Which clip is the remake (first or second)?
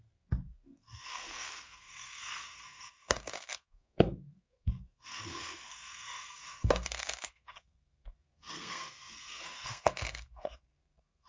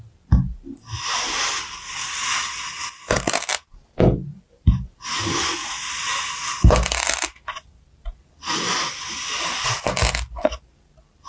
first